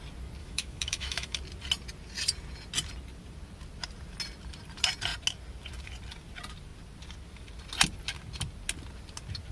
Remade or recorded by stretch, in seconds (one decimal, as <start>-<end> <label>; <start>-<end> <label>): 0.0-0.4 recorded; 0.4-1.4 remade; 1.4-9.5 recorded